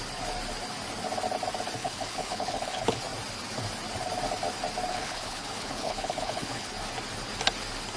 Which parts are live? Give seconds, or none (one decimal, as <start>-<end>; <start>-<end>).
0.0-1.8; 3.0-4.9; 6.7-8.0